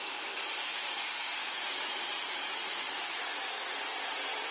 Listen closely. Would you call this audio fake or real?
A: real